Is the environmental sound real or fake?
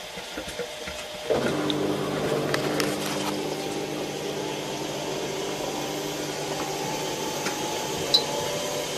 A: real